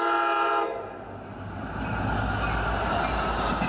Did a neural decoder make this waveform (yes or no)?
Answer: no